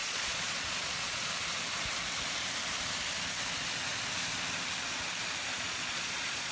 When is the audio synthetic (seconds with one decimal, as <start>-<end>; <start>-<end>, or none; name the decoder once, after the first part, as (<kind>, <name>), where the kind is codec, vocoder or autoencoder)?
0.0-1.3 (vocoder, Vocos); 5.5-6.5